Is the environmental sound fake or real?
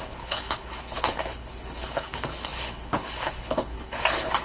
fake